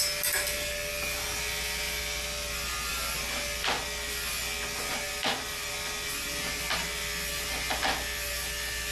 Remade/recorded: recorded